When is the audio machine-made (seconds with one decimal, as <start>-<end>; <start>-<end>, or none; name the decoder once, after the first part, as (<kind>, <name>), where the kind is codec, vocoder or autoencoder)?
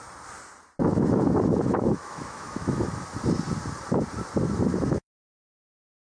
0.8-2.9 (autoencoder, DAC-VAE); 4.7-6.0